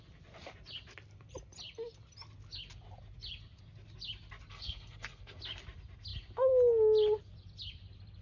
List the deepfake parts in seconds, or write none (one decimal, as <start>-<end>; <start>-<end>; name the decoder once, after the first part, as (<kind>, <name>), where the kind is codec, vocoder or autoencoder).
4.5-5.4 (codec, SNAC)